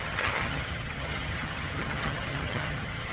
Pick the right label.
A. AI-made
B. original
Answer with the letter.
A